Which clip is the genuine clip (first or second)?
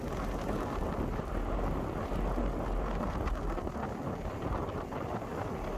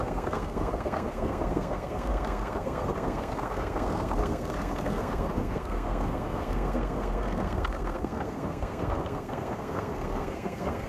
first